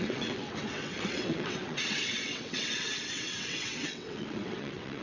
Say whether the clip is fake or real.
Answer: fake